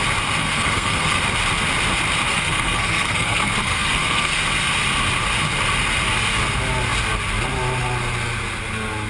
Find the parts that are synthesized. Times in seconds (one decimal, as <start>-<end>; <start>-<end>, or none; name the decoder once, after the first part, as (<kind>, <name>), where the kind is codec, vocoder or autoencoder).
0.4-1.2 (codec, SNAC); 2.3-4.4